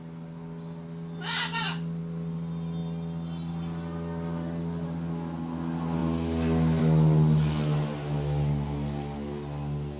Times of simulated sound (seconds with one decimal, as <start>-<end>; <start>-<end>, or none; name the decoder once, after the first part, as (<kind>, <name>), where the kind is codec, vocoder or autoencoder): none